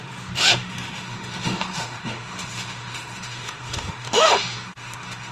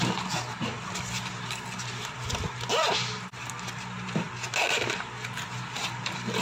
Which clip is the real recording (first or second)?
second